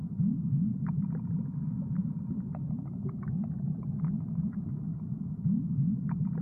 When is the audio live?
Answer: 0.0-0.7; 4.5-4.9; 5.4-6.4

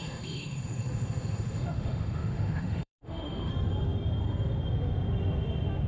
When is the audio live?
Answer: 3.5-5.9

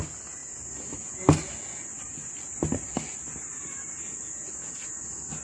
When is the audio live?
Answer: 0.0-5.4

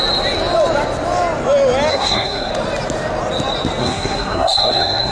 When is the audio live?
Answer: 0.0-1.9; 2.5-3.8

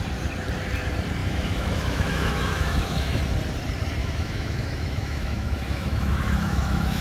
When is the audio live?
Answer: 0.0-1.2; 3.2-4.0

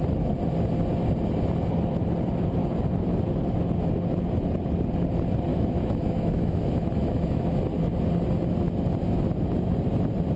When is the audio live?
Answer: 0.0-5.5; 7.6-10.4

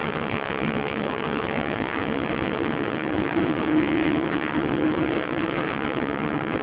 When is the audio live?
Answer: none

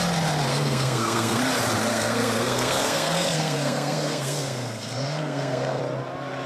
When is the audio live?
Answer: 0.0-0.5; 1.4-1.9; 5.8-6.5